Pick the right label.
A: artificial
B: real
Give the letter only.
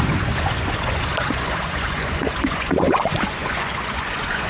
A